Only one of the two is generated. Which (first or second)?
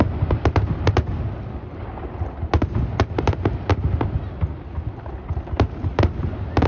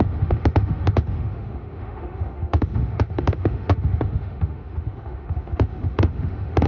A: second